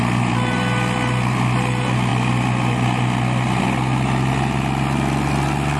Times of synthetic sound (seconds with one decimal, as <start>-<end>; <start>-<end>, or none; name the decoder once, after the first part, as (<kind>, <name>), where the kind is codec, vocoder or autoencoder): none